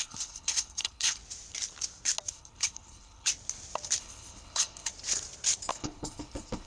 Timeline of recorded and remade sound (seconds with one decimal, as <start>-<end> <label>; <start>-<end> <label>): 0.0-1.2 remade; 1.2-2.3 recorded; 2.3-3.3 remade; 3.3-4.0 recorded; 4.0-4.9 remade; 4.9-5.7 recorded; 5.7-6.7 remade